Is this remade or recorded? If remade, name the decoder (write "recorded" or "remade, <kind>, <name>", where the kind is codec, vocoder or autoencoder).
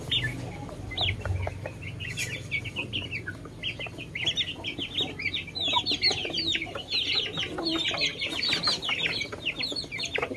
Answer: recorded